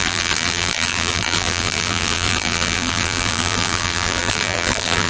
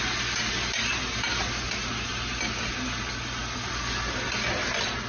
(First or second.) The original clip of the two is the second